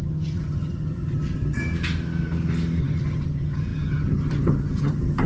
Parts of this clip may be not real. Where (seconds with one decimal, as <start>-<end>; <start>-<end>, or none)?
0.0-1.6; 2.8-5.3